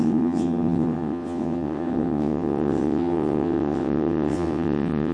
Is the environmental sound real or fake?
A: fake